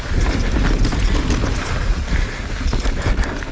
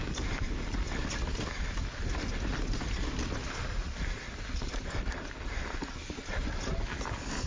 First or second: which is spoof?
second